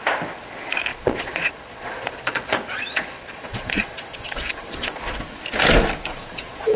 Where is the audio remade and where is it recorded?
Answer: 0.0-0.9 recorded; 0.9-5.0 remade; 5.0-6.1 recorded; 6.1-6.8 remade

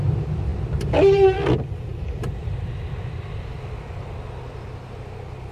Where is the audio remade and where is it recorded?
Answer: 0.0-1.9 recorded; 1.9-5.5 remade

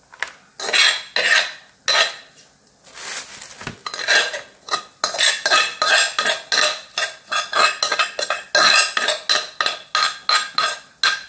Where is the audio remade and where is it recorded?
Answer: 0.0-11.3 recorded

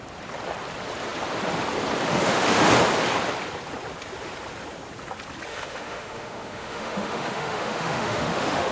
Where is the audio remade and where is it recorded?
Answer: 0.0-2.1 recorded; 2.1-2.7 remade; 2.7-5.5 recorded; 5.5-8.7 remade

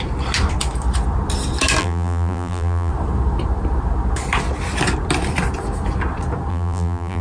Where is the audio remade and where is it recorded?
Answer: 0.0-1.8 recorded; 1.8-2.9 remade; 2.9-6.5 recorded; 6.5-7.2 remade